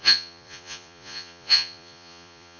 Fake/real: fake